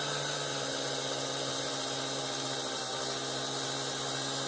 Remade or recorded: recorded